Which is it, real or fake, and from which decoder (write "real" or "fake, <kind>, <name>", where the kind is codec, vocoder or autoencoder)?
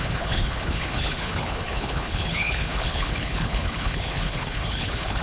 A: fake, codec, HILCodec